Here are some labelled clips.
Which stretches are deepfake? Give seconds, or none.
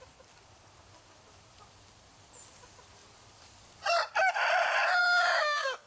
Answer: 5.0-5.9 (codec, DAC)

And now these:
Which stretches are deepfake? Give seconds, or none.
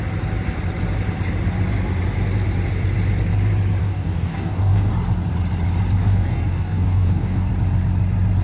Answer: 3.8-4.9 (codec, DAC); 6.0-7.5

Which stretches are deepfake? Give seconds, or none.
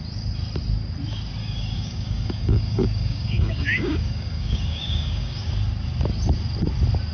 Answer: 1.4-5.5 (codec, DAC)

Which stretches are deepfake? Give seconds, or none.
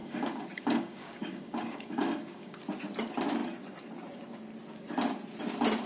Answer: 0.0-2.6 (codec, DAC)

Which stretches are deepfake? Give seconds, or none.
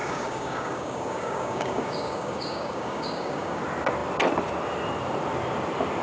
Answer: 0.0-3.6 (codec, DAC)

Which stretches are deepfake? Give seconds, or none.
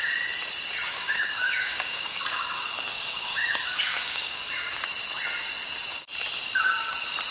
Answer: 0.9-4.8 (codec, DAC)